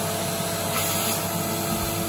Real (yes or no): yes